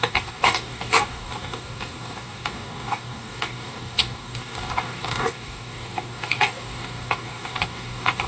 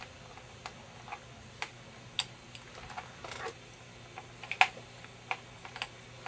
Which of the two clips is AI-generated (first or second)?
first